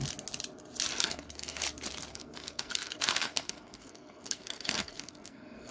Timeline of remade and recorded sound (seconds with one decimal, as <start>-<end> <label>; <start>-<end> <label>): 0.0-0.9 recorded; 0.9-1.6 remade; 1.6-2.1 recorded; 2.1-5.7 remade